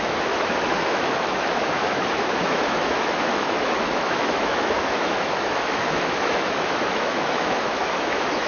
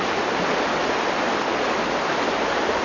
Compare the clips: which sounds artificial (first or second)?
first